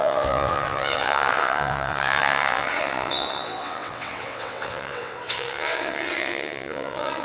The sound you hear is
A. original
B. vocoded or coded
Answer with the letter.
B